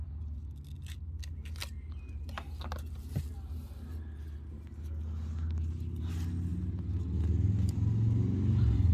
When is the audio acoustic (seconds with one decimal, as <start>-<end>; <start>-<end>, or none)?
0.0-8.9